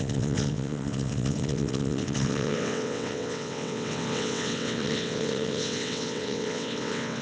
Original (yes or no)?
no